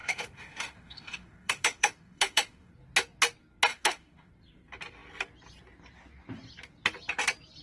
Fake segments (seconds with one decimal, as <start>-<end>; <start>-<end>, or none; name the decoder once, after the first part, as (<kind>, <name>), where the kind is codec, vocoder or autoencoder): 0.0-2.7 (autoencoder, DAC-VAE); 3.7-4.3